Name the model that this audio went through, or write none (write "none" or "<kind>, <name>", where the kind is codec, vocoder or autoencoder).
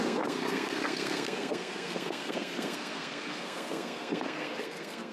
codec, SNAC